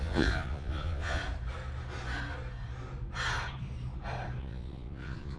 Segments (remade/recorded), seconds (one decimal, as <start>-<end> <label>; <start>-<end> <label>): 0.0-1.2 remade; 1.2-4.4 recorded; 4.4-5.4 remade